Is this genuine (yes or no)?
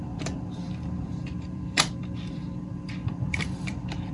no